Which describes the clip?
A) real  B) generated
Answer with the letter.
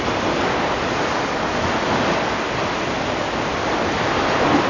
A